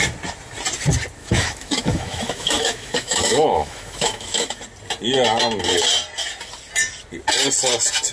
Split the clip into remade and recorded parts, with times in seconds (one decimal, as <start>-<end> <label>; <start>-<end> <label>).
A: 0.0-1.2 recorded; 1.2-4.6 remade; 4.6-8.1 recorded